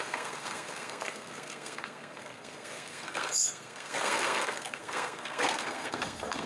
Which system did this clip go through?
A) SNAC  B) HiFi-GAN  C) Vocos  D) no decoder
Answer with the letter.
A